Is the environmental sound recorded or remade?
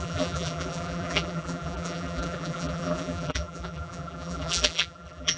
remade